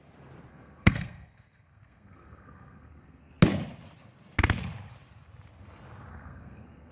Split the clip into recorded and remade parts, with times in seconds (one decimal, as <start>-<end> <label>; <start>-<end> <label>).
0.0-0.5 recorded; 0.5-3.3 remade; 3.3-6.1 recorded; 6.1-6.9 remade